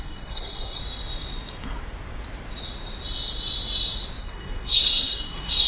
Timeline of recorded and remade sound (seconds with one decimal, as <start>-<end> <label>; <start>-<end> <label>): 0.0-0.8 remade; 0.8-4.2 recorded; 4.2-5.7 remade